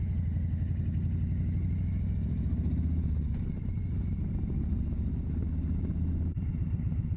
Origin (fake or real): real